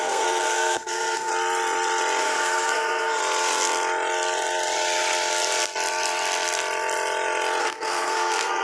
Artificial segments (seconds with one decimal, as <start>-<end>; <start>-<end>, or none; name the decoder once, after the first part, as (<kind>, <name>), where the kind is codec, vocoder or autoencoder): 0.0-1.3 (codec, SNAC); 2.2-3.2; 7.6-8.6